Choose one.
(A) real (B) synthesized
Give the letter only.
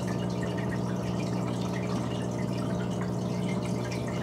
A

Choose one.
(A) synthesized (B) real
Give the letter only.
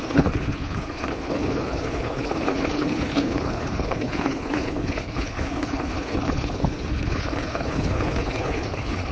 A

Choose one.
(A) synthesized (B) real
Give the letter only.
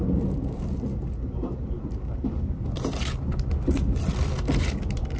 B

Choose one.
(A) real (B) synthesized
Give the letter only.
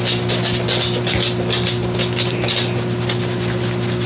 A